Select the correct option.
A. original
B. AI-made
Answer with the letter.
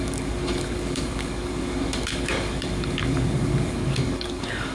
B